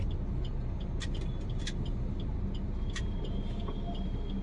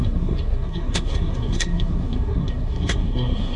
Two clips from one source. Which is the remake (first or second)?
second